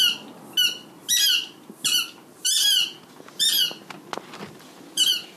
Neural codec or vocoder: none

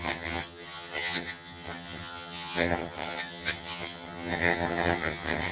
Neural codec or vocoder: vocoder, HiFi-GAN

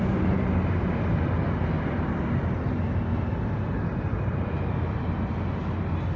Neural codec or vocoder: none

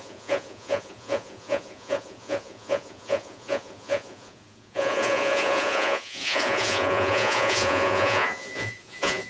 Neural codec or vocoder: vocoder, Vocos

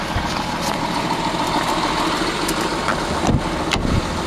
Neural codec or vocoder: none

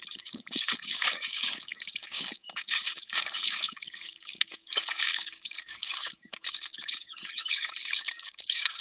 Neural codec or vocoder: codec, DAC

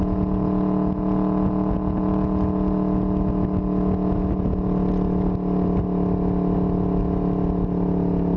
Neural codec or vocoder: none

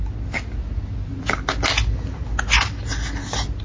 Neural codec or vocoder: none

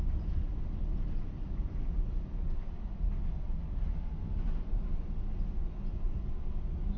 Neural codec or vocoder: none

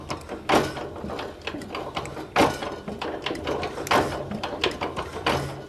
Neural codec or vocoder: none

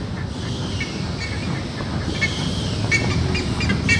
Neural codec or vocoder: none